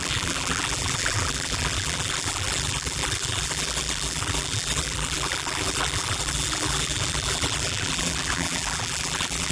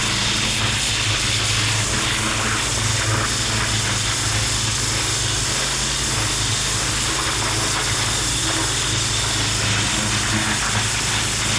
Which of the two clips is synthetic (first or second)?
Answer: first